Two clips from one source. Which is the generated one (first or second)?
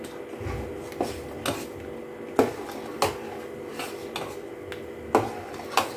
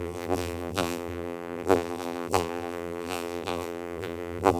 second